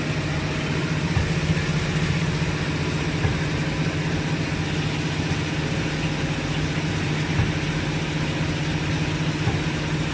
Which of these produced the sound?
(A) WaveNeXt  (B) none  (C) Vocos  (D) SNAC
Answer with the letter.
B